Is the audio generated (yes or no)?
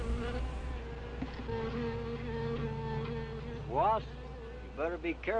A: no